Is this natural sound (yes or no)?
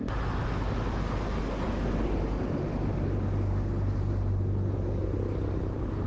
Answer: yes